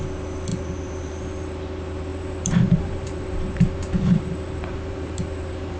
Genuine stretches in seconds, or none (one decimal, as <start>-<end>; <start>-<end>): 0.0-0.5; 1.2-2.1